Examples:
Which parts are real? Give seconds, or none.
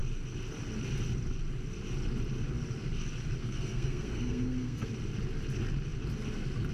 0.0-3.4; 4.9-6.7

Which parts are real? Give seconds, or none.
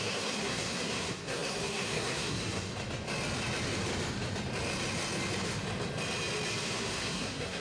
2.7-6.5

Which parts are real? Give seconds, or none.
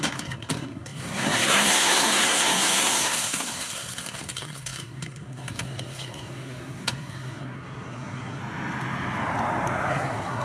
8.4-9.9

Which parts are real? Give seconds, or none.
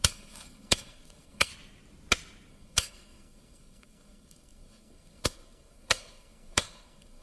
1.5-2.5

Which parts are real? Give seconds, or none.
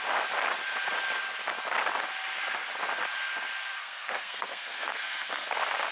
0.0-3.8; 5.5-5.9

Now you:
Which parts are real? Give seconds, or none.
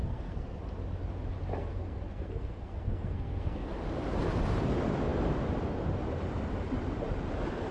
0.6-1.6; 3.7-7.7